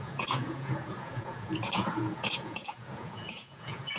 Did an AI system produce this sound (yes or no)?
yes